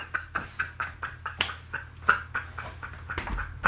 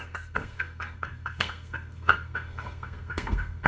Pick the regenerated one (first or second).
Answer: second